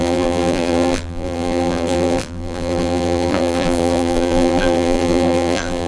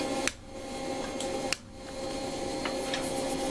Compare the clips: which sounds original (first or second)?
second